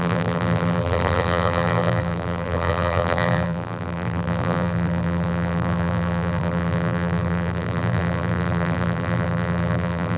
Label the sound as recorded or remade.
remade